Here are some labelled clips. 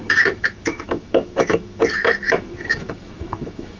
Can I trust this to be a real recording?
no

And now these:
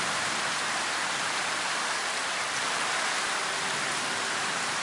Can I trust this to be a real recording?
no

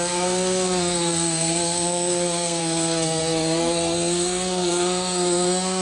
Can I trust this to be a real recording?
no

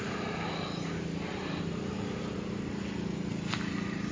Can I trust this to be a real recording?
yes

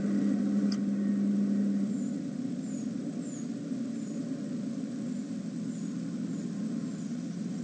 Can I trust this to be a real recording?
yes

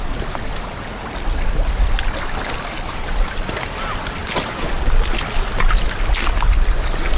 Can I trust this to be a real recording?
yes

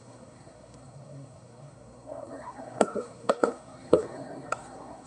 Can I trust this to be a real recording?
no